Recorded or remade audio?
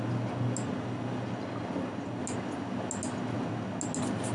recorded